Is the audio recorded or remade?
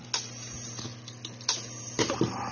recorded